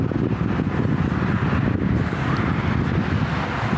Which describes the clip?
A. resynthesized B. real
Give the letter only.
B